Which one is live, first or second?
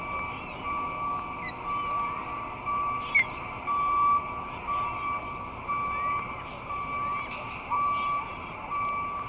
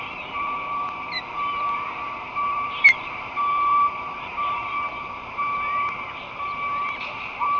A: first